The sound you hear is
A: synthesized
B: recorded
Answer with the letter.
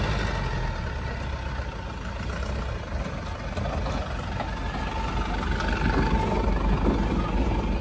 B